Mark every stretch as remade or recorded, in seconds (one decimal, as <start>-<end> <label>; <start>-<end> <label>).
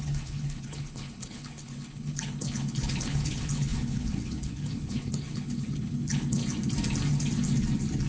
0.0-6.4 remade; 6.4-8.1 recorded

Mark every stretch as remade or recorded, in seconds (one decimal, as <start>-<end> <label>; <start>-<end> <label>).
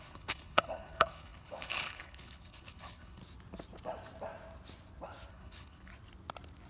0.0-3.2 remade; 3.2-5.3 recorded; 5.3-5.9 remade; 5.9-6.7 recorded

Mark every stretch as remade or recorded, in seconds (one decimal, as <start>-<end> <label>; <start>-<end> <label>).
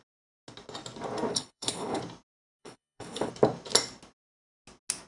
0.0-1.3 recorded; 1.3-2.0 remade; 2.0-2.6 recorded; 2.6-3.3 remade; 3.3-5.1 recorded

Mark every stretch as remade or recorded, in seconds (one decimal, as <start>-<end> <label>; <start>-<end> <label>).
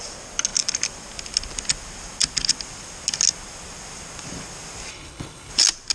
0.0-4.9 recorded; 4.9-5.5 remade; 5.5-5.9 recorded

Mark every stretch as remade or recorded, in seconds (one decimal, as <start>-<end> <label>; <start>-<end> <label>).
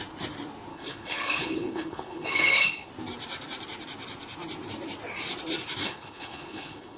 0.0-0.7 recorded; 0.7-2.9 remade; 2.9-5.8 recorded; 5.8-7.0 remade